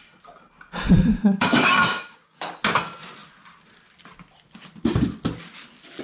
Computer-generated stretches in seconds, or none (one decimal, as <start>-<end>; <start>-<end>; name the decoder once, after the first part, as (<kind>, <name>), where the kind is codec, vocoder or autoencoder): 1.1-2.5 (codec, DAC)